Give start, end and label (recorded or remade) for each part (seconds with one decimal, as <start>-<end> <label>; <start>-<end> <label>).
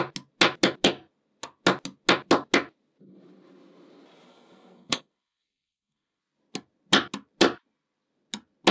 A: 0.0-4.3 recorded; 4.3-6.2 remade; 6.2-8.7 recorded